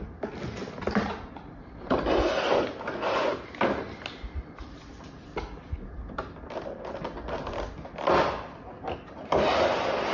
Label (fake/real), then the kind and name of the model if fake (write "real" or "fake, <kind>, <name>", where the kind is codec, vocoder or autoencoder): real